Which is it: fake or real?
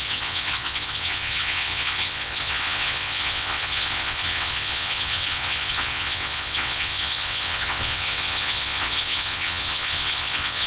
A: fake